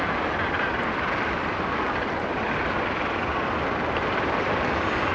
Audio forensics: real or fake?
real